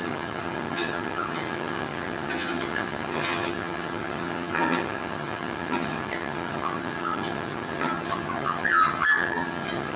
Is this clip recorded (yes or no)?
no